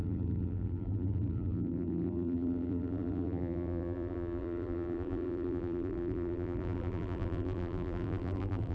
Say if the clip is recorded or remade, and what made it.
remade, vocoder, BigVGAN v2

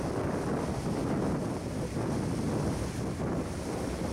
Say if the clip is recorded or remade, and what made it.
recorded